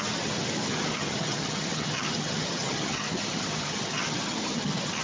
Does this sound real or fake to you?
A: fake